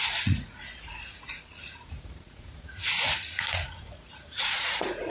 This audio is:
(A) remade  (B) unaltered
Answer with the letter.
A